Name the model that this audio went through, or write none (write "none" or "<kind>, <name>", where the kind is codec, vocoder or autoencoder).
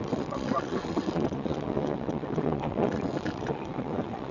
vocoder, WaveNeXt